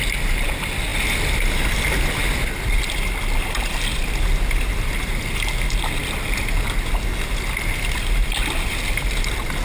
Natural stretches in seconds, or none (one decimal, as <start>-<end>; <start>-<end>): 0.0-9.6